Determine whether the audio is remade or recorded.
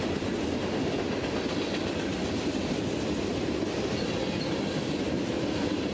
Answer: recorded